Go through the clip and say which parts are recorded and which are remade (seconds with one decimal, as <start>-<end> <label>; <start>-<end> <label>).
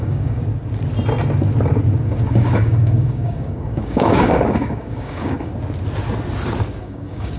0.0-0.4 remade; 0.4-2.0 recorded; 2.0-5.5 remade; 5.5-6.8 recorded; 6.8-7.4 remade